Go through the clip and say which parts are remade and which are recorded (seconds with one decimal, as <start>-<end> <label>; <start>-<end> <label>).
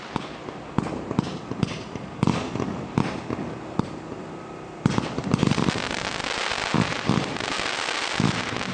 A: 0.0-5.2 recorded; 5.2-6.4 remade; 6.4-8.7 recorded